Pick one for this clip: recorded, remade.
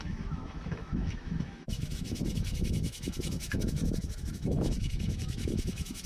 remade